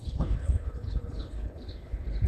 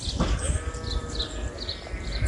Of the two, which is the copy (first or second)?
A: first